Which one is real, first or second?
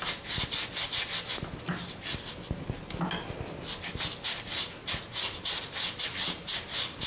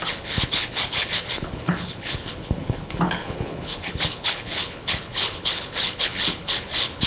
first